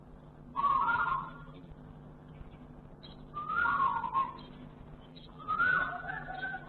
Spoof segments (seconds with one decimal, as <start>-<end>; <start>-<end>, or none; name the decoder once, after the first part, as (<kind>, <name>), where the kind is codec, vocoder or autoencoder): 0.5-1.7 (vocoder, BigVGAN v2); 5.1-6.7